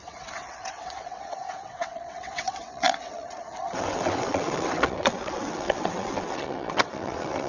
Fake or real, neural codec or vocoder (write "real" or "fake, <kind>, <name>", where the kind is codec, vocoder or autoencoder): fake, vocoder, WaveNeXt